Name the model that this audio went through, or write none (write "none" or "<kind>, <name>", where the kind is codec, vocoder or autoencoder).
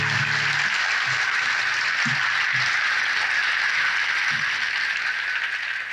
none